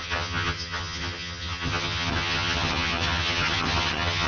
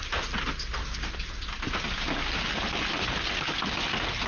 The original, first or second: second